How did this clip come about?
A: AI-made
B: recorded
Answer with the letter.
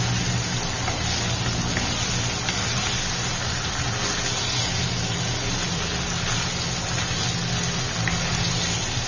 B